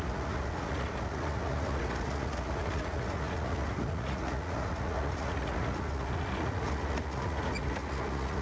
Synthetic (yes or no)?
yes